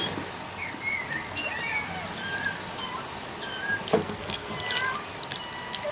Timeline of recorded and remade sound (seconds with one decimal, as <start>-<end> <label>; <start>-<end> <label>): 0.0-3.9 recorded; 3.9-4.5 remade; 4.5-5.9 recorded